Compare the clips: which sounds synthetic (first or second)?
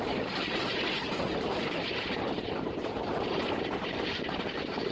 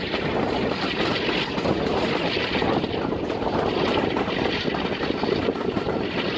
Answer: first